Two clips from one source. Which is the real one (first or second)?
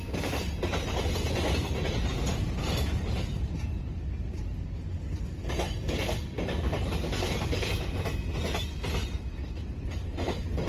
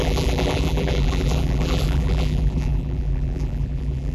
first